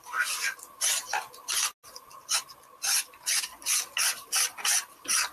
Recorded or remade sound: recorded